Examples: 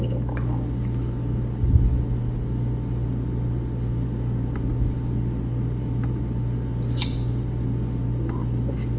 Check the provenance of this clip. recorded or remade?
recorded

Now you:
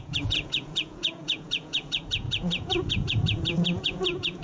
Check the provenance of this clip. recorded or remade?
remade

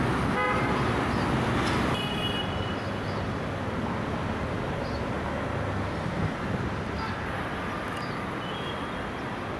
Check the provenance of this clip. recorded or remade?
recorded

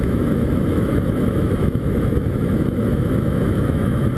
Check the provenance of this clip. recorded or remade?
remade